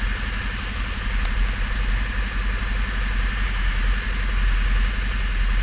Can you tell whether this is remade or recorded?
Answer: recorded